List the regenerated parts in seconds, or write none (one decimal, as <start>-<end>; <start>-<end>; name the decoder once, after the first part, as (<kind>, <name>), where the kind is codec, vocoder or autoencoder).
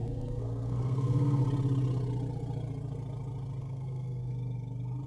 0.0-1.4 (codec, SNAC); 3.6-4.3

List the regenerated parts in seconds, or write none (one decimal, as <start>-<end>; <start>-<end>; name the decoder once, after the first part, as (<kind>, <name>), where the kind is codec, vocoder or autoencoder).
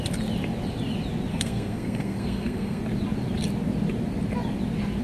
1.3-2.8 (codec, SNAC)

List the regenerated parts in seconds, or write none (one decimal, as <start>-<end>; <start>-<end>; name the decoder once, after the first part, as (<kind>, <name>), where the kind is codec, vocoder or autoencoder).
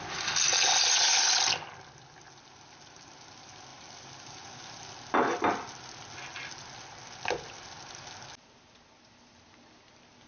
none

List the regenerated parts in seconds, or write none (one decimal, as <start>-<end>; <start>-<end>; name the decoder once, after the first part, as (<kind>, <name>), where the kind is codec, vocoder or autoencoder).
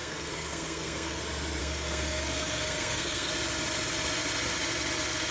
0.0-1.2 (codec, SNAC); 1.6-3.3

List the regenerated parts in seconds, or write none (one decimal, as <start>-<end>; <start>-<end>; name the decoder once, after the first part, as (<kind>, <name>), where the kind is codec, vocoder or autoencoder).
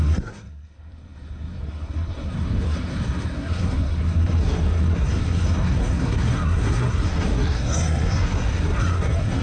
0.0-9.4 (codec, SNAC)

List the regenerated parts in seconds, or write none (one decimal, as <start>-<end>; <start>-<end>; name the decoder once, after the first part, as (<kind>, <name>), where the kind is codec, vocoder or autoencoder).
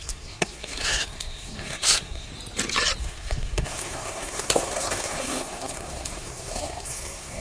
0.0-2.3 (codec, SNAC); 3.0-7.4